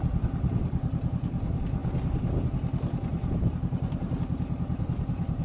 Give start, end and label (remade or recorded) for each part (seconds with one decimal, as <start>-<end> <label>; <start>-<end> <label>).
0.0-5.4 recorded